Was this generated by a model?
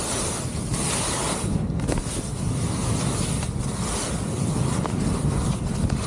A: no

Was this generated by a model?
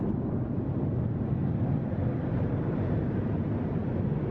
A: no